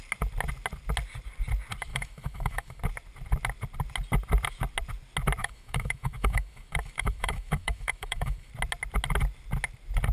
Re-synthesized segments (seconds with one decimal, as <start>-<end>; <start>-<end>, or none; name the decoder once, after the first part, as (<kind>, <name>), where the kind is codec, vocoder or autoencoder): 1.9-2.8 (autoencoder, DAC-VAE); 5.4-8.5